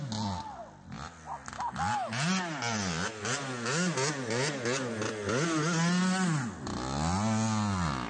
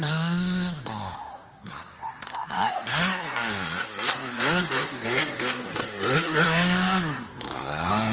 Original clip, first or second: first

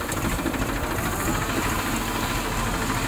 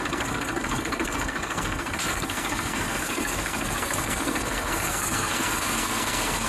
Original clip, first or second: first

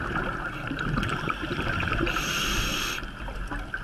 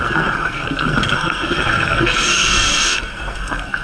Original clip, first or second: first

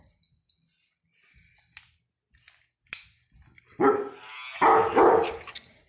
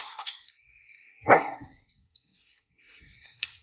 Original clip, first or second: first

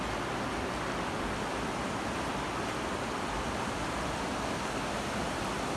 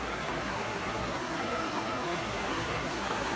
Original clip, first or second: first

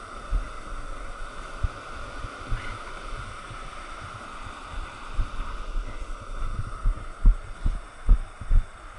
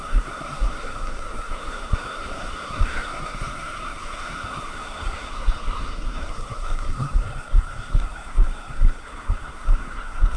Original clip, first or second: first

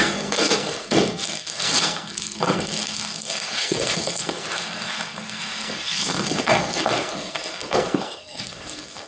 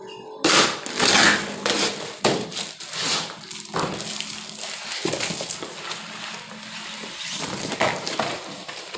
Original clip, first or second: second